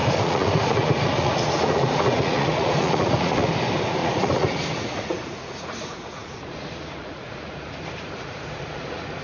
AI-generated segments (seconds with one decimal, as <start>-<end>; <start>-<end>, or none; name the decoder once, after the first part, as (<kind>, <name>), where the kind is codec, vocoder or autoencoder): 0.0-3.5 (vocoder, Vocos); 4.0-9.2